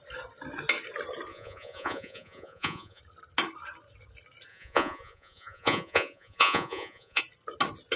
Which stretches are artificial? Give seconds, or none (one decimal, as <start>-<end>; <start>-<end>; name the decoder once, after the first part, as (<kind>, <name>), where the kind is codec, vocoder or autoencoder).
1.3-3.0 (vocoder, Vocos); 4.5-7.2